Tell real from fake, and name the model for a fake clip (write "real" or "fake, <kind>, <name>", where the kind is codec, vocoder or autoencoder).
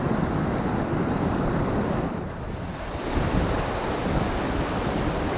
fake, vocoder, BigVGAN v2